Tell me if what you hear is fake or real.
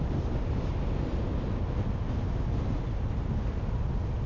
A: real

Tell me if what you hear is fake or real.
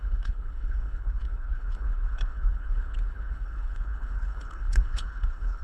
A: fake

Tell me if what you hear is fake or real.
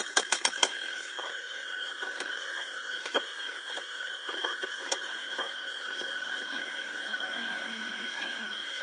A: fake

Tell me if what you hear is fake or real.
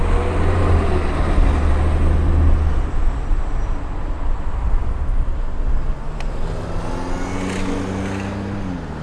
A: real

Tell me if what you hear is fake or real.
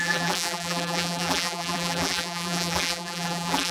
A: fake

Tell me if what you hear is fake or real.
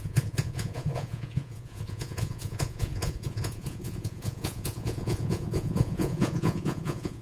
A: fake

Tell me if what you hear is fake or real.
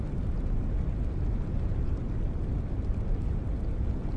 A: real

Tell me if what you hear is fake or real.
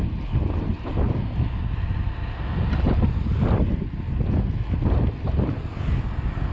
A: real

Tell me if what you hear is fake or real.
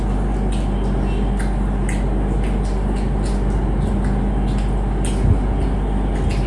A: real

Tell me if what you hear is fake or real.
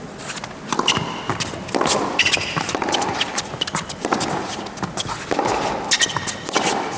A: real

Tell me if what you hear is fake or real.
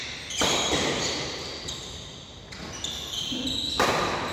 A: real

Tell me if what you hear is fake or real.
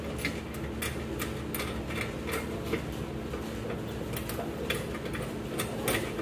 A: real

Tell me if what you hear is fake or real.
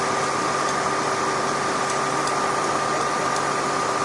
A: real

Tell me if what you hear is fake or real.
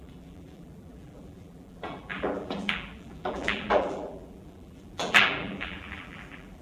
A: fake